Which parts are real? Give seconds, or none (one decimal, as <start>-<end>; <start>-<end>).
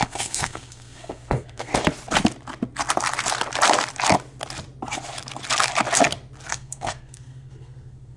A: 1.7-6.5